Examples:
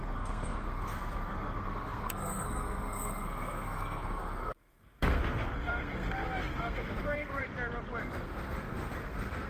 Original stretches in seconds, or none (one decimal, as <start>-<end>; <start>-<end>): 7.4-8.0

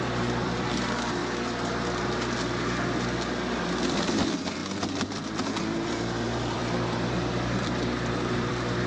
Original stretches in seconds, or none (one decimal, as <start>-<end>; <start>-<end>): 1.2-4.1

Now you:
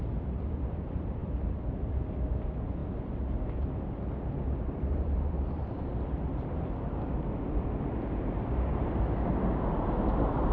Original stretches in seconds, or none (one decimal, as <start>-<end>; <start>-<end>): 0.0-10.5

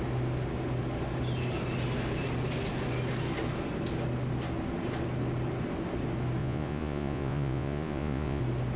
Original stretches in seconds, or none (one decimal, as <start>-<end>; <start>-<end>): 0.0-6.4; 8.4-8.8

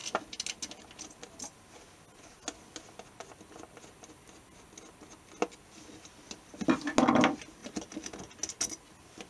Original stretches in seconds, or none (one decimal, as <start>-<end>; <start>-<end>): 0.0-9.3